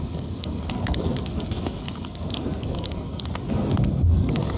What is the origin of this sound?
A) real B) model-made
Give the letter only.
B